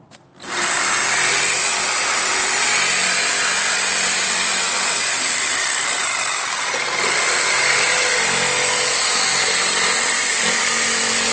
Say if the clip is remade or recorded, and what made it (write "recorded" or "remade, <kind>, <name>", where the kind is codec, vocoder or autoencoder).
recorded